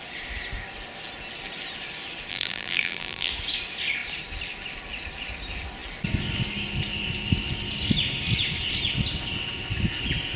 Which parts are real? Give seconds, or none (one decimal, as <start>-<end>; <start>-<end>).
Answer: 0.0-2.3; 3.3-10.4